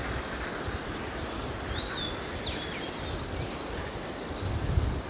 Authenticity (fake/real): real